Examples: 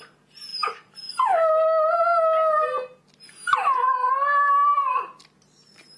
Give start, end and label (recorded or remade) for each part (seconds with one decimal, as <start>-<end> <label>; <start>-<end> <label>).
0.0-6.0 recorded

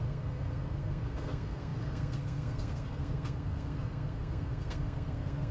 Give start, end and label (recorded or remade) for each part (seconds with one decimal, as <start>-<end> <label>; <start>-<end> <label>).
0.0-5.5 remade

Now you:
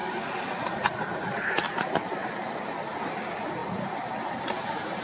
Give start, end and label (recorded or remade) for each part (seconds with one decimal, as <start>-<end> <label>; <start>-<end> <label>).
0.0-5.0 recorded

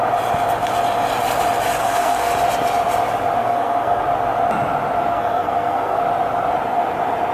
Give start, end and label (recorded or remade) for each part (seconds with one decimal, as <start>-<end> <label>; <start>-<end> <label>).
0.0-1.8 recorded; 1.8-2.3 remade; 2.3-3.4 recorded; 3.4-4.0 remade; 4.0-5.1 recorded; 5.1-6.0 remade; 6.0-7.3 recorded

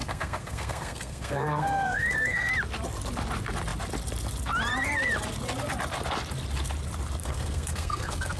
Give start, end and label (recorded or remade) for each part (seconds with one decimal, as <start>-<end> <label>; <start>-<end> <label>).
0.0-2.5 remade; 2.5-7.2 recorded; 7.2-8.4 remade